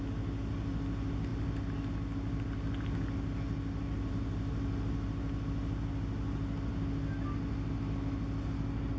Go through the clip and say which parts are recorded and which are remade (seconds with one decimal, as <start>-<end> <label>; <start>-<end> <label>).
0.0-9.0 recorded